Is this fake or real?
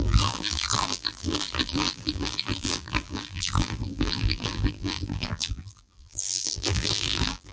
fake